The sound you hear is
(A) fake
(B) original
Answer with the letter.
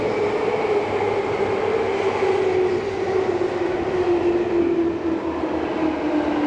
B